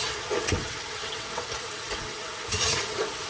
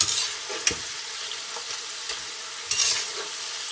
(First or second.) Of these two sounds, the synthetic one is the first